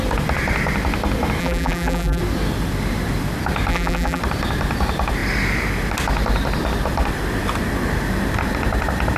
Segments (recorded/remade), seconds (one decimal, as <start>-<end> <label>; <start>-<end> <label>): 0.0-1.4 recorded; 1.4-2.2 remade; 2.2-3.7 recorded; 3.7-4.2 remade; 4.2-9.2 recorded